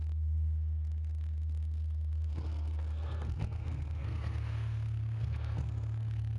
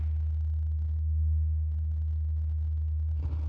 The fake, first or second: first